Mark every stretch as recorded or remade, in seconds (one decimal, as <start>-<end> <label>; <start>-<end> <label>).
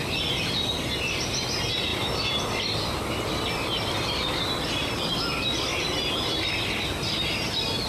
0.0-7.9 recorded